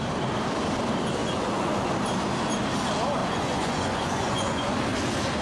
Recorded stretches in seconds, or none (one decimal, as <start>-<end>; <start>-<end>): 0.0-1.2; 1.9-3.2; 4.8-5.4